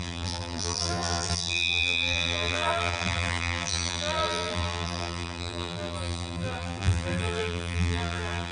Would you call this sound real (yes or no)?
no